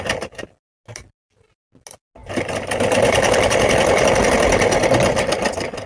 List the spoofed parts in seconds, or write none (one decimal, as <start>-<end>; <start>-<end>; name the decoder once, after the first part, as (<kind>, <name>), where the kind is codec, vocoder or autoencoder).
none